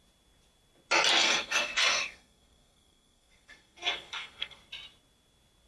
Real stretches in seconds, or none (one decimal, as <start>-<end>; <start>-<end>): 0.0-1.2; 4.6-5.7

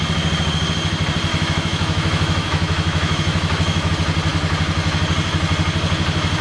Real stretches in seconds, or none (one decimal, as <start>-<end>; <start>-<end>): 0.0-1.3; 3.9-6.4